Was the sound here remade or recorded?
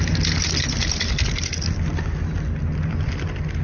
recorded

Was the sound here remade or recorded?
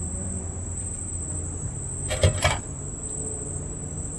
remade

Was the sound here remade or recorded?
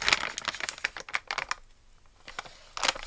recorded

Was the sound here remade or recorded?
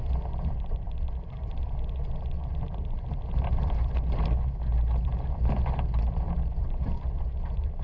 remade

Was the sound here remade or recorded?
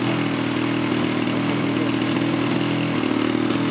recorded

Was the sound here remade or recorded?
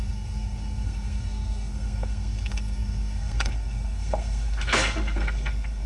remade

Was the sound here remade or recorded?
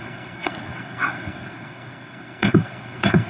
remade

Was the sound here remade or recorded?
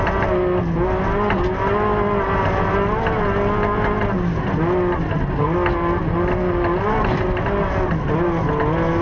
recorded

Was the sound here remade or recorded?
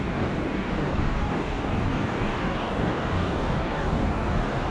remade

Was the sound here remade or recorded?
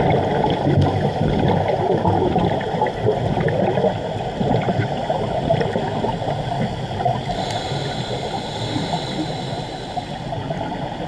recorded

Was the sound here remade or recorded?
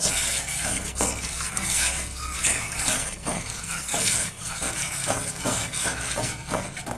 remade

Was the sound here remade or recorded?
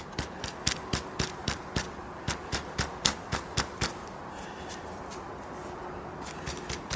recorded